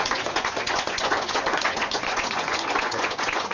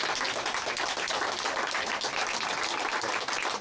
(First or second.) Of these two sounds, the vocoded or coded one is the first